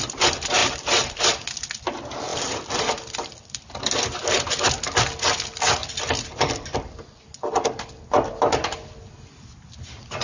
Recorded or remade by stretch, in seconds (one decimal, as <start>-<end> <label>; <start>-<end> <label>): 0.0-2.3 recorded; 2.3-3.8 remade; 3.8-5.8 recorded; 5.8-8.0 remade; 8.0-10.2 recorded